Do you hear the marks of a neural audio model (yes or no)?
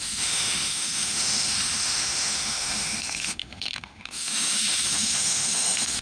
yes